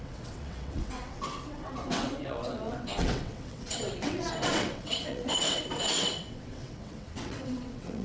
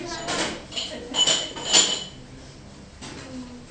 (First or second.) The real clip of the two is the second